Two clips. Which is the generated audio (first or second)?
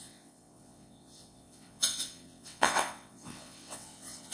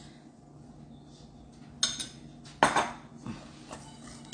first